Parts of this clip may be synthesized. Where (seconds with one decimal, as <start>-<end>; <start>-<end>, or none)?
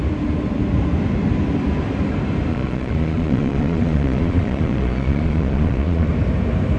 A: 2.5-6.1